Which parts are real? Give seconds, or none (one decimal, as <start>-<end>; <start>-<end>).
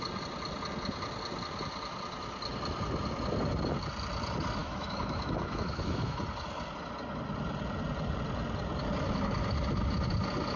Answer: 0.0-4.6; 6.2-10.6